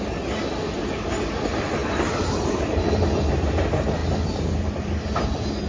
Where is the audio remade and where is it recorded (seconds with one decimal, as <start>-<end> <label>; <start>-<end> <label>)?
0.0-0.8 recorded; 0.8-1.3 remade; 1.3-5.7 recorded